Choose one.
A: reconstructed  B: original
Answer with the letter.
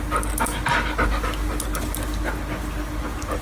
B